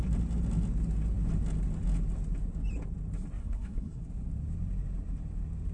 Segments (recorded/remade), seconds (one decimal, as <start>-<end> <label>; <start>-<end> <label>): 0.0-3.4 recorded; 3.4-4.0 remade; 4.0-5.7 recorded